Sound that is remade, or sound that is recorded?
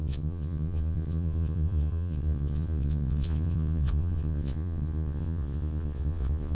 remade